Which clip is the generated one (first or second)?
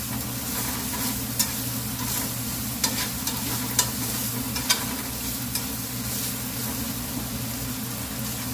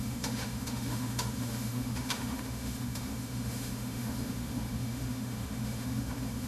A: second